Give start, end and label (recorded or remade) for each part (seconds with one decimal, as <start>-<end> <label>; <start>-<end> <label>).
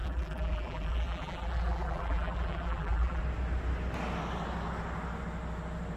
0.0-3.2 remade; 3.2-6.0 recorded